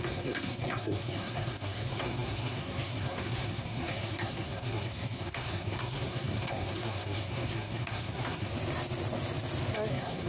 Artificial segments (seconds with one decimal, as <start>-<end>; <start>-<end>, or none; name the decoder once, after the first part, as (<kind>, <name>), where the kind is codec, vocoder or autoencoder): 0.0-8.5 (codec, SNAC); 9.9-10.3